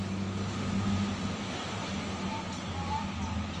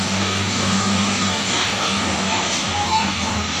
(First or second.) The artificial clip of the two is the second